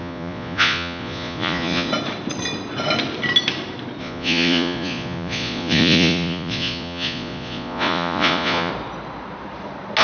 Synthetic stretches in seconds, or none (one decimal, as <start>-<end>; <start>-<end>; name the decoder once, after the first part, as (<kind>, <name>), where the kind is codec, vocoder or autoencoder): 0.0-1.9 (vocoder, Vocos); 4.0-8.7